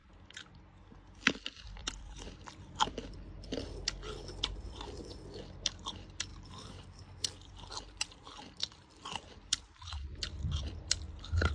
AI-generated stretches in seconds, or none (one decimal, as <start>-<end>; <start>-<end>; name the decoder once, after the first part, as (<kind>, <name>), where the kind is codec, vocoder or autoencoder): 1.8-3.6 (vocoder, BigVGAN v2); 6.3-11.5